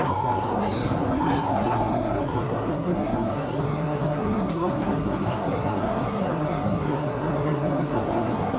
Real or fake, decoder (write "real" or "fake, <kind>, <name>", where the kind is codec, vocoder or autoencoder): fake, codec, SNAC